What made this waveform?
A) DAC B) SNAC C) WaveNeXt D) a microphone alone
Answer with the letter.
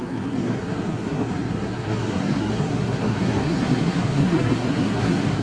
B